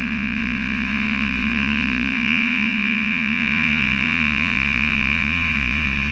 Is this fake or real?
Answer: fake